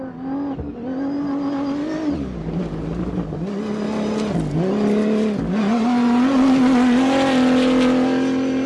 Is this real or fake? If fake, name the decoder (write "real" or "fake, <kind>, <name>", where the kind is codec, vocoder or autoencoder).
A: real